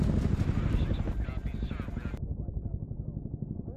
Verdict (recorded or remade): recorded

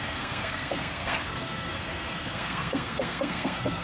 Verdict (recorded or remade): remade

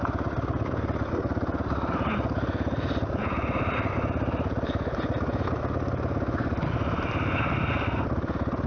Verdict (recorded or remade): recorded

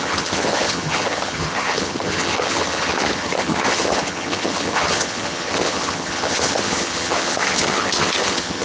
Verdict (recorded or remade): remade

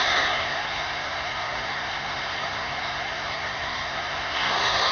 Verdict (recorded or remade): remade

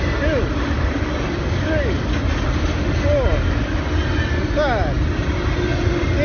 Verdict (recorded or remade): recorded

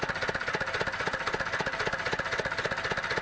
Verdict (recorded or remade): recorded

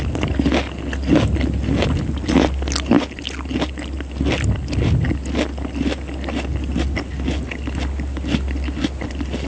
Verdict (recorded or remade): recorded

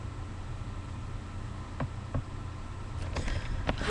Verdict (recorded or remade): recorded